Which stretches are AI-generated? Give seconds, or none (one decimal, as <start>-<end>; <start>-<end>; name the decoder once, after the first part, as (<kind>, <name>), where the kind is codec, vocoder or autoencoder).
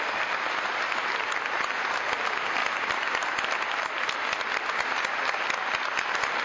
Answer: none